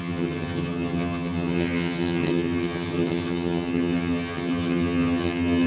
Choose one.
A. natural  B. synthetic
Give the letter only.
B